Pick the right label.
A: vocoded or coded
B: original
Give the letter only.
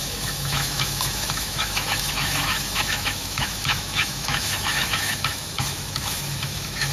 A